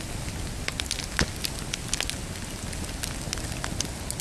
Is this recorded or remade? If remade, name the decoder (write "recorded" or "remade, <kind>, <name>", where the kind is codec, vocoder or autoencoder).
recorded